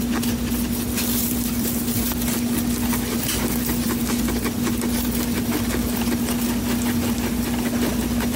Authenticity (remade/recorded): recorded